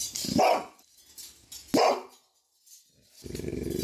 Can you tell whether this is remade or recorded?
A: recorded